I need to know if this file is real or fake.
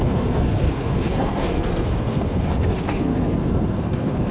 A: fake